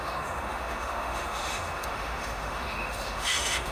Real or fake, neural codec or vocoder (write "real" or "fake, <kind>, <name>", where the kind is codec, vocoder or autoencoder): fake, autoencoder, DAC-VAE